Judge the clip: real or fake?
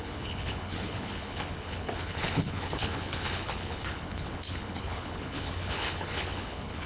fake